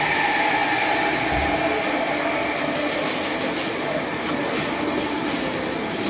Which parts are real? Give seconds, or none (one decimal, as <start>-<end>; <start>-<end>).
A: 0.0-6.1